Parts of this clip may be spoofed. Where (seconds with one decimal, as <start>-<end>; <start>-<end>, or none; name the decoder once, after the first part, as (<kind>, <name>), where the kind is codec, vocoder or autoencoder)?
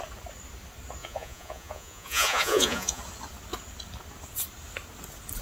1.0-3.0 (vocoder, Vocos)